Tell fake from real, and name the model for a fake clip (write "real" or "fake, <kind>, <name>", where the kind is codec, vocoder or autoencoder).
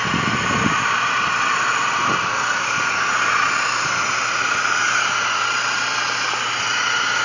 real